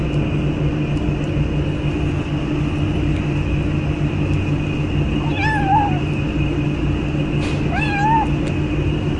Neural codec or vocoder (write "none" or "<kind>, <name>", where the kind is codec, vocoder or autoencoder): none